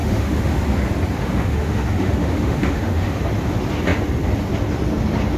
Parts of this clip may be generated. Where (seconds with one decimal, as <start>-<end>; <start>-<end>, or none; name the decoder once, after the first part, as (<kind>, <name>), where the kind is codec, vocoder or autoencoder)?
0.0-0.6 (autoencoder, DAC-VAE); 1.2-3.2